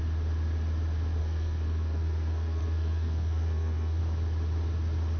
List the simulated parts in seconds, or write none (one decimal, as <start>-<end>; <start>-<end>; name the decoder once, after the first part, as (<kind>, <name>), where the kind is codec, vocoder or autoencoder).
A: 1.2-4.0 (codec, SNAC)